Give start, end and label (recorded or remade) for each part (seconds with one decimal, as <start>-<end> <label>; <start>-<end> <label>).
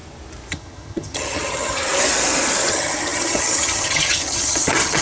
0.0-0.5 recorded; 0.5-1.8 remade; 1.8-2.7 recorded; 2.7-5.0 remade